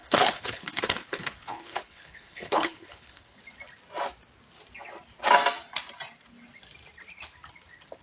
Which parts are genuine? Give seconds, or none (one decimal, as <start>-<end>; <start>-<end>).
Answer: 3.4-8.0